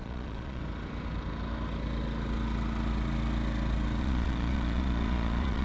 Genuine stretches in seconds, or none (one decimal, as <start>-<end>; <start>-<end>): 0.6-4.0